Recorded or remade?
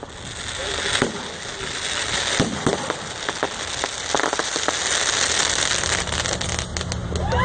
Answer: recorded